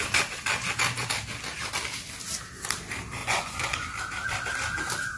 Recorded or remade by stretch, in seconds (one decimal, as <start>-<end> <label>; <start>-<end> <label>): 0.0-3.2 recorded; 3.2-3.9 remade; 3.9-5.2 recorded

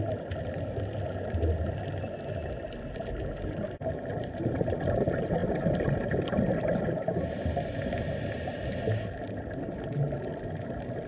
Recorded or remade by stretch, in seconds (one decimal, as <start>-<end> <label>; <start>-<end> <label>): 0.0-11.1 recorded